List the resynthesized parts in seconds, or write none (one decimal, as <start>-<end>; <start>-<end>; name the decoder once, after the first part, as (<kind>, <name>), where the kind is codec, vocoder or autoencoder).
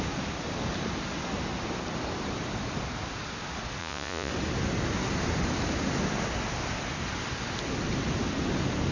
3.8-4.3 (vocoder, Vocos)